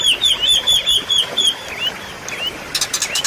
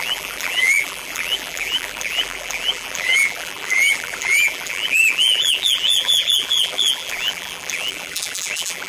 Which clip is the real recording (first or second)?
first